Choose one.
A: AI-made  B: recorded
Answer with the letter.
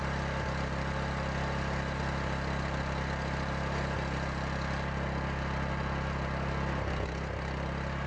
B